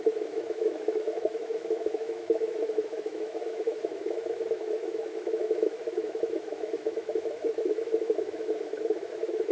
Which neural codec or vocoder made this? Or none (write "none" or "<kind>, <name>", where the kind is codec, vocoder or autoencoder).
autoencoder, DAC-VAE